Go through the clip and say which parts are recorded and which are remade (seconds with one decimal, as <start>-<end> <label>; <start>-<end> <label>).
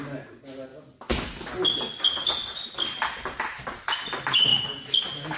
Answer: 0.0-5.4 recorded